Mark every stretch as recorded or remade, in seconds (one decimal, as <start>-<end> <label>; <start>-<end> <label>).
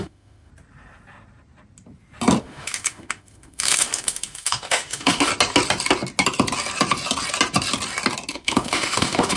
0.0-0.5 remade; 0.5-2.4 recorded; 2.4-5.3 remade; 5.3-8.3 recorded; 8.3-9.4 remade